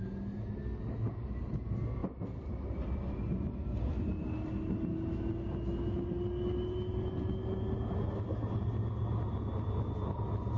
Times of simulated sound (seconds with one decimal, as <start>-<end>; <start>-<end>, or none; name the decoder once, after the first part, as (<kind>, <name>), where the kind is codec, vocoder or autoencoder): none